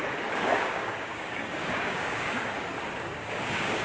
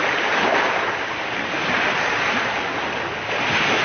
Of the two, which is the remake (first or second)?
first